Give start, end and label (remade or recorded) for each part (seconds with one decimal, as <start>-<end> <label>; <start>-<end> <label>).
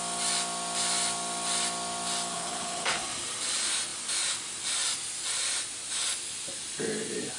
0.0-2.3 recorded; 2.3-3.0 remade; 3.0-7.4 recorded